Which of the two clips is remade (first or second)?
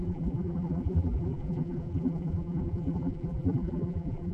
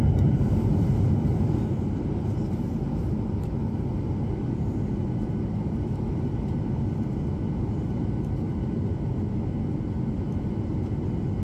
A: first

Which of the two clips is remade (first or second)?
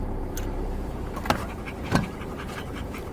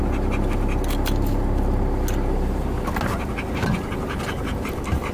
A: first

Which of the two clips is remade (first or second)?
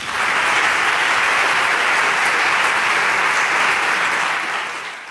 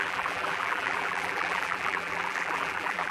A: second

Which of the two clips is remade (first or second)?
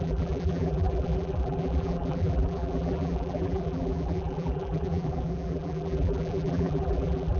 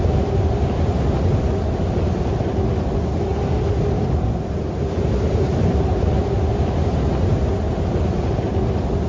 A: first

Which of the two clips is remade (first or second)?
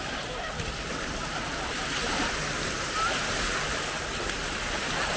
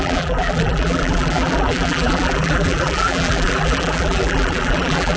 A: second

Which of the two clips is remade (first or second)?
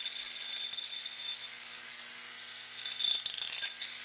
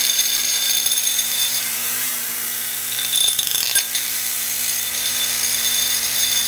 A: second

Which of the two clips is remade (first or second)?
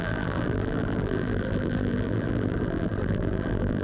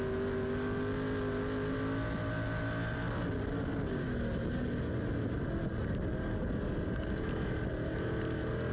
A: first